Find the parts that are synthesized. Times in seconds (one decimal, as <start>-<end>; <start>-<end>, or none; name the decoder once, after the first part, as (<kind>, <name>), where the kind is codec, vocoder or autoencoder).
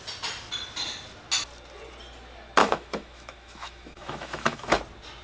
2.6-4.8 (autoencoder, DAC-VAE)